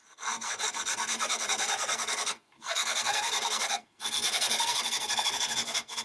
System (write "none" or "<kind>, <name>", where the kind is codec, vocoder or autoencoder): codec, SNAC